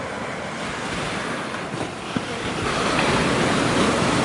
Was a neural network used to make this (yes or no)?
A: no